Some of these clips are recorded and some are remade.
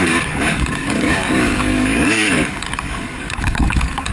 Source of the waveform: remade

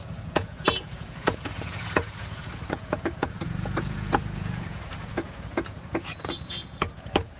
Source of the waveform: remade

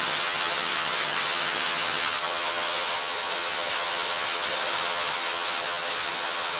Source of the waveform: remade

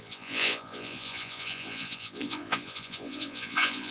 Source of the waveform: remade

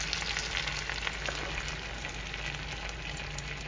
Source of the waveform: recorded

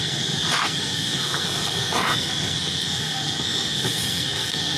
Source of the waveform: remade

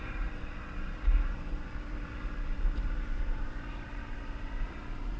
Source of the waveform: remade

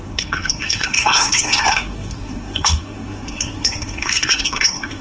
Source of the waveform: remade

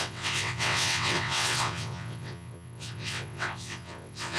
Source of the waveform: remade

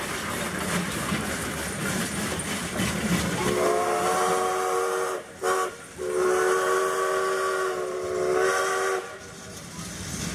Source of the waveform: recorded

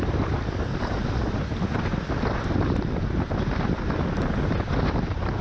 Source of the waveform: recorded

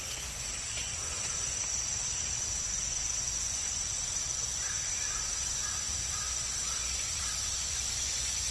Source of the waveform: remade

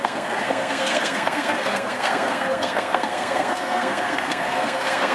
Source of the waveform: remade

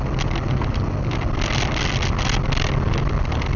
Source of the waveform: recorded